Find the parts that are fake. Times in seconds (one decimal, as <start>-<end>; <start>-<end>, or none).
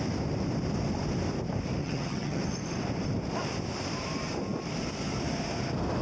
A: 1.8-2.4